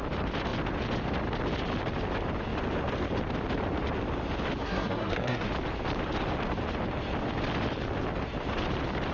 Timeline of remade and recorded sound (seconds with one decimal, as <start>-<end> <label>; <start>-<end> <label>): 0.0-4.6 recorded; 4.6-5.5 remade; 5.5-9.1 recorded